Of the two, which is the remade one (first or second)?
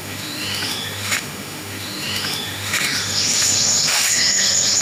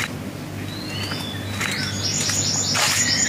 first